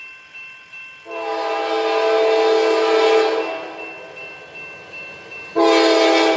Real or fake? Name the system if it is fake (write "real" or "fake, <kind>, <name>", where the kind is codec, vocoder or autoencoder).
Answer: real